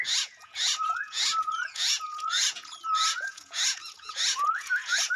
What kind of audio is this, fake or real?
fake